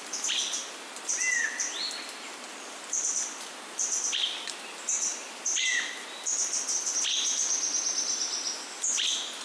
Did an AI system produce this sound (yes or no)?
no